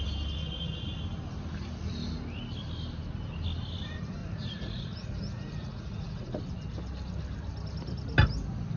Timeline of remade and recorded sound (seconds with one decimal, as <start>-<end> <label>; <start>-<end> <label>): 0.0-0.4 recorded; 0.4-1.0 remade; 1.0-4.2 recorded; 4.2-6.4 remade; 6.4-8.8 recorded